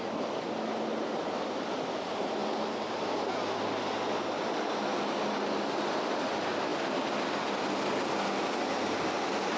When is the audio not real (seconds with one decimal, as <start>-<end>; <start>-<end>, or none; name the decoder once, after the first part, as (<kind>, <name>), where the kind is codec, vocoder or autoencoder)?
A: none

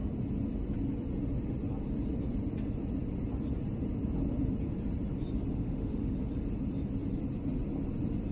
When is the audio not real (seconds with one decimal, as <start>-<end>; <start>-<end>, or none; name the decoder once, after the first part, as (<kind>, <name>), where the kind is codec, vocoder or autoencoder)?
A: 5.6-6.2 (autoencoder, DAC-VAE)

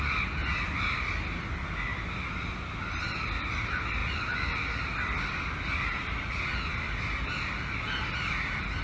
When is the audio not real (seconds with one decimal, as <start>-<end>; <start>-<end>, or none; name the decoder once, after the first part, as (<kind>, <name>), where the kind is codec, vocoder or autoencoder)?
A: none